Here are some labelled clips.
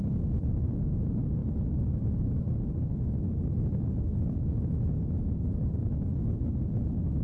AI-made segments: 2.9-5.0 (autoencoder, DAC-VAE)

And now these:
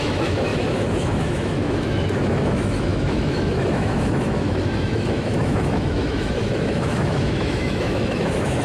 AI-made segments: 0.0-8.6 (autoencoder, DAC-VAE)

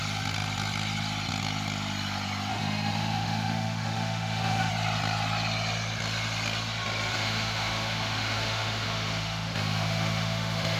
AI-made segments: 2.5-4.7 (autoencoder, DAC-VAE); 7.1-10.8

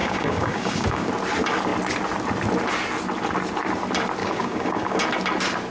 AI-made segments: 0.0-1.1 (codec, DAC); 4.2-5.0